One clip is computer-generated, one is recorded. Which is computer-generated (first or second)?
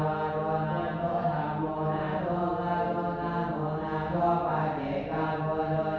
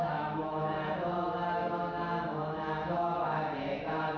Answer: second